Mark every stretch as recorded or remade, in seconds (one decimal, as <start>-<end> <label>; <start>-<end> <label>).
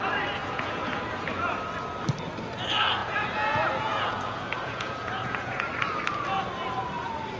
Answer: 0.0-0.4 recorded; 0.4-1.4 remade; 1.4-3.0 recorded; 3.0-5.7 remade; 5.7-7.4 recorded